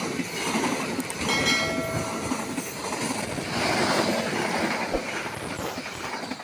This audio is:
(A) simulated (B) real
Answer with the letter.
B